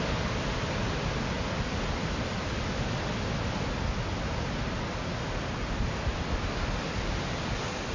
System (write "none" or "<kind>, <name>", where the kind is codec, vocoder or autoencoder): none